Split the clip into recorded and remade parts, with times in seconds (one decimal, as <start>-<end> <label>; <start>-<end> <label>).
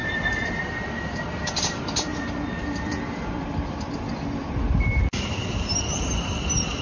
0.0-6.8 remade